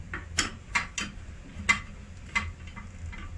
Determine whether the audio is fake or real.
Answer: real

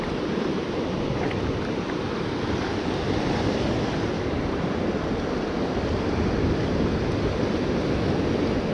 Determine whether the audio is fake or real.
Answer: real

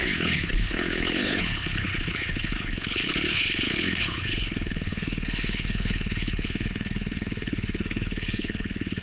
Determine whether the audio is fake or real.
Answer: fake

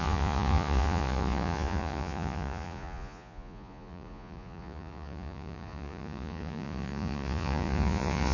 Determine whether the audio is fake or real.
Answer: fake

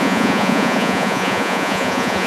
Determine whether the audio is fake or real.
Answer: fake